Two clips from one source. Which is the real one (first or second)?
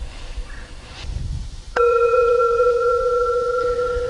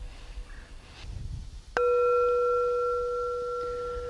second